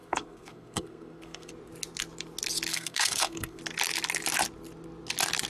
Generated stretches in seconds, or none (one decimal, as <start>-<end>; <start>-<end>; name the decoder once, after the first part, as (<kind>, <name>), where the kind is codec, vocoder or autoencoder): 0.0-1.5 (codec, SNAC); 2.7-3.6